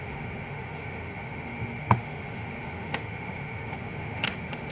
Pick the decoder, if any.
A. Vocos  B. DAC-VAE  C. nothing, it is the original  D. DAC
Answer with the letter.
B